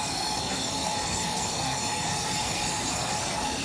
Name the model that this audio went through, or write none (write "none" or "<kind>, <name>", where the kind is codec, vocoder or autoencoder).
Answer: codec, SNAC